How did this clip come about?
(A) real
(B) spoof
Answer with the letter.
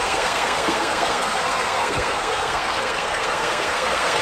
B